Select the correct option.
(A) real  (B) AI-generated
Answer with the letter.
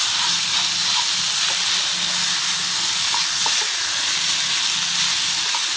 A